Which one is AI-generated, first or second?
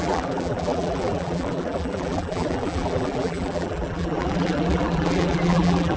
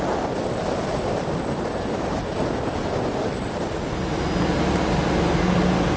first